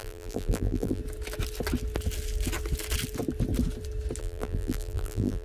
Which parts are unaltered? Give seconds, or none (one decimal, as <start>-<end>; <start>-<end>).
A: 1.0-4.2